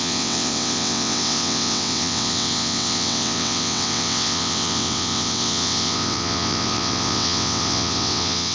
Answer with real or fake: fake